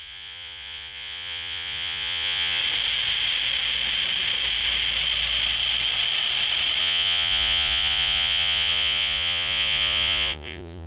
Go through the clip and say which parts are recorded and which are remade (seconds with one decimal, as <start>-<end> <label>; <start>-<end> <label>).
0.0-2.6 remade; 2.6-6.8 recorded; 6.8-10.9 remade